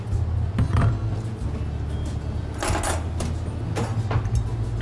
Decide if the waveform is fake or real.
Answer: real